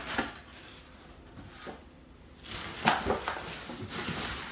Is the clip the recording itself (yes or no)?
yes